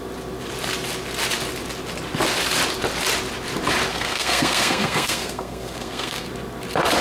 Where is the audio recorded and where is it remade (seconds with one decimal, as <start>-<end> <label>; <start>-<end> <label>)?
0.0-3.9 recorded; 3.9-6.3 remade; 6.3-7.0 recorded